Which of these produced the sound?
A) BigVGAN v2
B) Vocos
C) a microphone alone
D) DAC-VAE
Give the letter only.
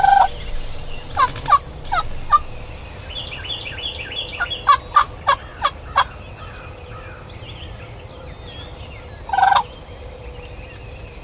C